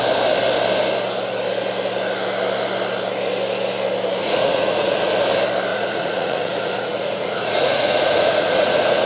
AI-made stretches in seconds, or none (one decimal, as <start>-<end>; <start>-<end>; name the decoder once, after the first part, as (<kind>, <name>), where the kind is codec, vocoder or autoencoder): 4.2-5.1 (vocoder, Vocos); 5.7-9.1